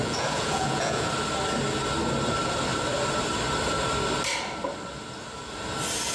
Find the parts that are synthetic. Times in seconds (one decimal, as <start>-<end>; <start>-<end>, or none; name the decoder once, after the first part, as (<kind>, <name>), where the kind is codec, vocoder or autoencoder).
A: 0.0-1.1 (vocoder, Vocos)